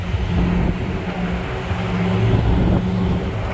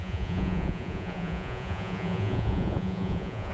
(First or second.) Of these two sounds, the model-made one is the second